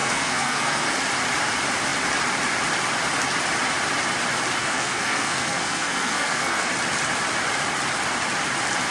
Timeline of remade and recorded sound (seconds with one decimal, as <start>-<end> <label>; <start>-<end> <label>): 0.0-0.9 remade; 0.9-4.6 recorded; 4.6-6.7 remade; 6.7-8.9 recorded